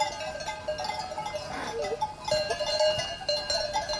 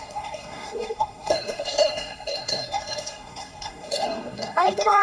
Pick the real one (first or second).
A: first